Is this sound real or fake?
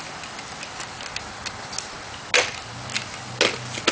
real